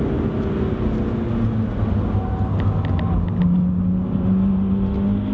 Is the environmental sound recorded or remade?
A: recorded